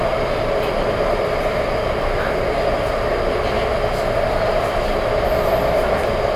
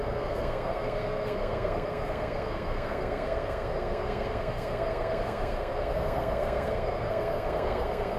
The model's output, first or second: second